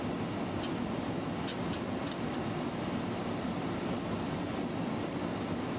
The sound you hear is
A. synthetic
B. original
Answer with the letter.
B